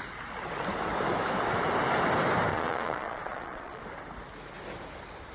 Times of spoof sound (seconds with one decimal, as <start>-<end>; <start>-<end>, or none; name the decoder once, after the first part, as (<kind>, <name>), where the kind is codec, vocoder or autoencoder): 2.5-3.8 (vocoder, Vocos)